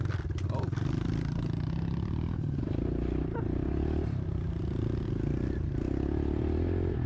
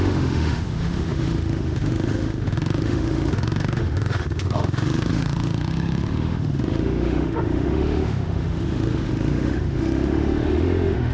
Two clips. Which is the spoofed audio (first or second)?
second